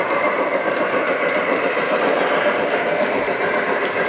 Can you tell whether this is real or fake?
fake